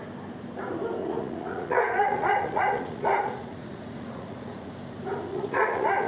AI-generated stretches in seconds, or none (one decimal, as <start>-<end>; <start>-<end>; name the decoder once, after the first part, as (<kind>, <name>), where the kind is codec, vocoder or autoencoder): 1.0-4.7 (vocoder, Vocos); 5.3-6.1

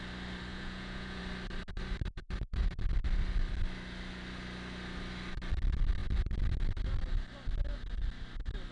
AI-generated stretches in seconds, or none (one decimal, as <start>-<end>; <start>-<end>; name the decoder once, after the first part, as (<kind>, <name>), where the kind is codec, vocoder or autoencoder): 0.5-1.2 (vocoder, Vocos)

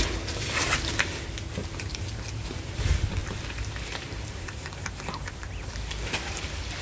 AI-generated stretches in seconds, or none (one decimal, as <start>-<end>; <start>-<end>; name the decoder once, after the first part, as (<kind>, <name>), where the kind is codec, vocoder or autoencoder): 1.6-2.8 (vocoder, BigVGAN v2); 3.2-5.7